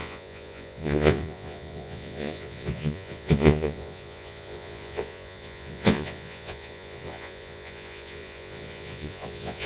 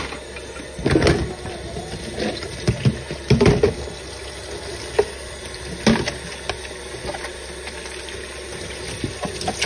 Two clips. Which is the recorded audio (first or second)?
second